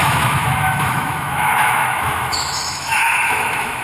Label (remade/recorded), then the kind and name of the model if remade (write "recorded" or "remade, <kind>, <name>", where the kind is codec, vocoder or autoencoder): remade, autoencoder, DAC-VAE